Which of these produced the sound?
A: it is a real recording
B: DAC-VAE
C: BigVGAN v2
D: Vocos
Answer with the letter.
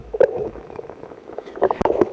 B